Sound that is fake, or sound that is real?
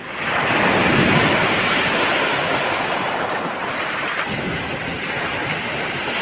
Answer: fake